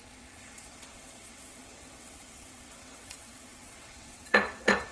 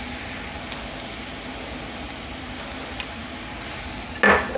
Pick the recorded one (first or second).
second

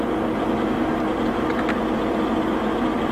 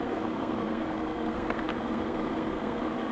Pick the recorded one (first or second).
first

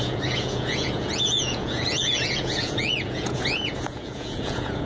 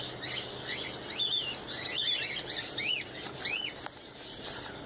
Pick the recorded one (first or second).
second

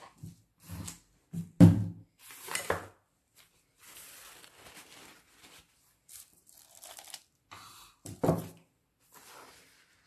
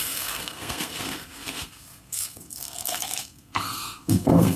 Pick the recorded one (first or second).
first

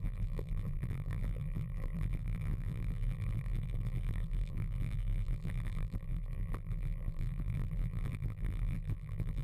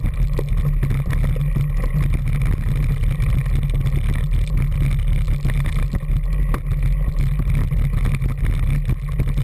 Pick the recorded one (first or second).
second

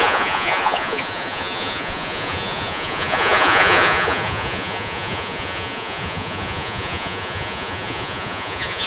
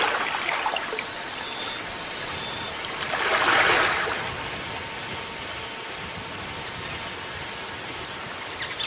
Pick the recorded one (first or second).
second